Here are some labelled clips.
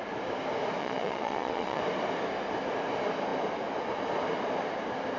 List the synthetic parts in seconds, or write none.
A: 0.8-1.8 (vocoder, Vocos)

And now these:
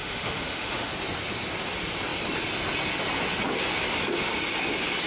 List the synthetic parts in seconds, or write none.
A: 0.0-0.9 (autoencoder, DAC-VAE)

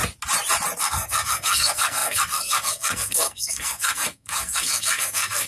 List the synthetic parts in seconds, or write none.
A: 0.8-5.5 (codec, SNAC)

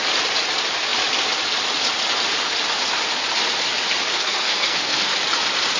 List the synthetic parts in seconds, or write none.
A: 4.1-5.1 (codec, SNAC)

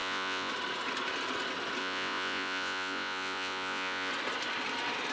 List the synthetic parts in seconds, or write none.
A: 0.0-0.5 (vocoder, Vocos); 1.8-4.1